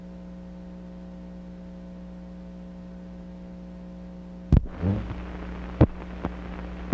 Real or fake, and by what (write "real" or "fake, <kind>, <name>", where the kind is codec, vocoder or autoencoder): real